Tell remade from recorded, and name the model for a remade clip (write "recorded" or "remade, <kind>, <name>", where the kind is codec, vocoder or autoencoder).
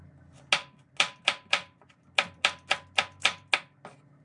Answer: recorded